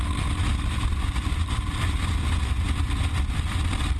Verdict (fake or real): real